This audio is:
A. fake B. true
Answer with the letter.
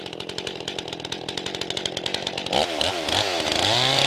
A